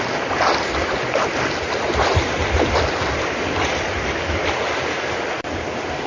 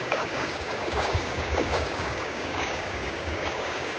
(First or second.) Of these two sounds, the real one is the first